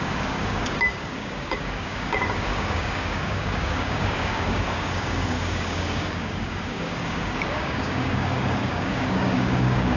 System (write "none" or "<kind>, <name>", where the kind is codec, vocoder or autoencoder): codec, DAC